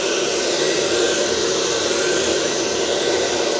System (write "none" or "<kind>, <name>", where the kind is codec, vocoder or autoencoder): none